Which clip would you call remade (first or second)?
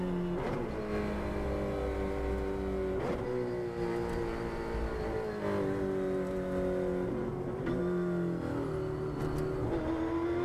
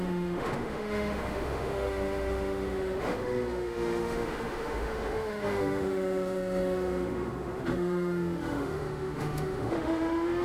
second